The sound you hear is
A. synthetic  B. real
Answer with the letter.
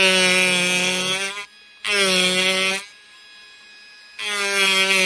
B